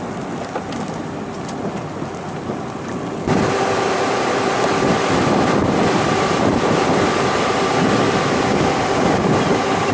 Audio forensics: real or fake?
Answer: real